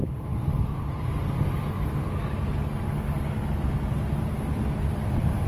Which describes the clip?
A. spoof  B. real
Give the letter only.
B